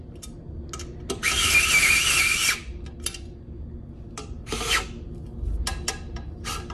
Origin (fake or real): real